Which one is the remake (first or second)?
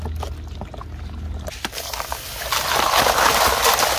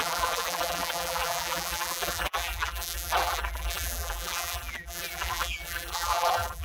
second